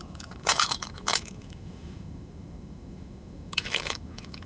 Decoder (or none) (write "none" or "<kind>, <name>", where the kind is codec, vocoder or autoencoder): autoencoder, DAC-VAE